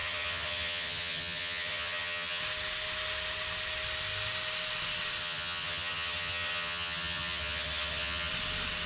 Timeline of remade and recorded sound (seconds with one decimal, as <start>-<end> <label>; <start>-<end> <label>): 0.0-2.4 remade; 2.4-5.2 recorded; 5.2-8.3 remade; 8.3-8.9 recorded